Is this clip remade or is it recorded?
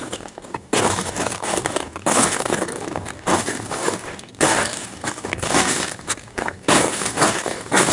remade